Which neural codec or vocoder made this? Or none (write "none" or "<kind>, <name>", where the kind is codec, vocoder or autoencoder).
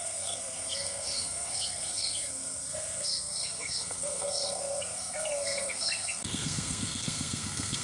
codec, SNAC